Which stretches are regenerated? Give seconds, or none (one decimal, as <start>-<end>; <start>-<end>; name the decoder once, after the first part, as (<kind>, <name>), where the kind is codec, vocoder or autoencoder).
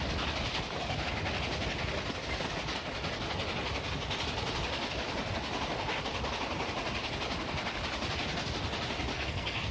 9.1-9.7 (codec, SNAC)